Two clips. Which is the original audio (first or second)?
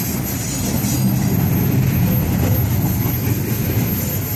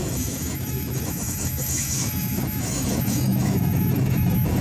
first